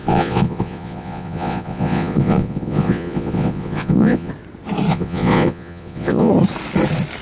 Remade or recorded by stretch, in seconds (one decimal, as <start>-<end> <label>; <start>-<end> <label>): 0.0-4.3 remade; 4.3-4.9 recorded; 4.9-6.3 remade; 6.3-7.2 recorded